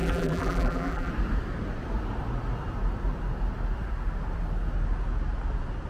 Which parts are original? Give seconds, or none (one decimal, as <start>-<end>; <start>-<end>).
1.1-5.9

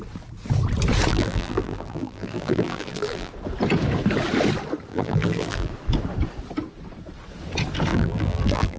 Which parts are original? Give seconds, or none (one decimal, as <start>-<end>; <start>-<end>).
0.0-1.1; 3.3-4.9; 5.7-7.9